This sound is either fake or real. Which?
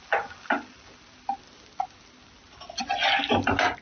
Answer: real